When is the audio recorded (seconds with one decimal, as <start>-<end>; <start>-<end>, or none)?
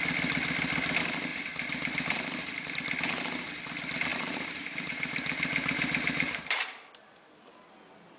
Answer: 0.0-1.3; 2.7-4.1; 6.8-8.2